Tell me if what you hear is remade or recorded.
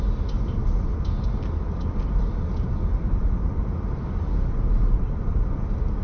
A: recorded